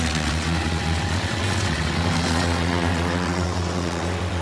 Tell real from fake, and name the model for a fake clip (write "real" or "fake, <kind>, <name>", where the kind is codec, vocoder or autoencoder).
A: fake, vocoder, WaveNeXt